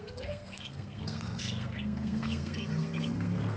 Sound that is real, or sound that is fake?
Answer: fake